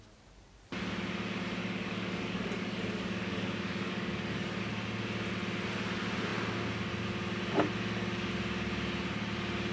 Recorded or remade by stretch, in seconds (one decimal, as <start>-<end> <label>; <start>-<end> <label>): 0.0-1.6 recorded; 1.6-4.6 remade; 4.6-9.7 recorded